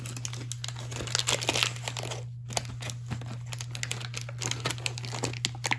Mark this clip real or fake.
real